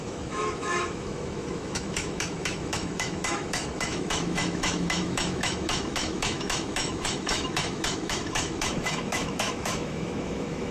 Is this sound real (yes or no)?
no